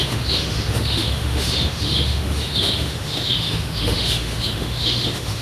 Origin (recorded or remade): remade